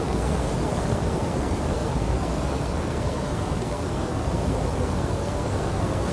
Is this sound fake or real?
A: fake